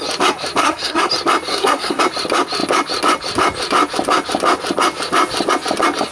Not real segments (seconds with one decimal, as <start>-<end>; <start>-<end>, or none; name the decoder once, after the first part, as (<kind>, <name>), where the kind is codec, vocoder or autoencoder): 0.6-1.1 (codec, SNAC); 1.5-2.0